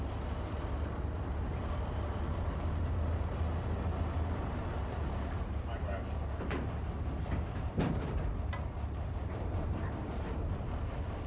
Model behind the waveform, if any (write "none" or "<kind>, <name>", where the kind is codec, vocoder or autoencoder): vocoder, BigVGAN v2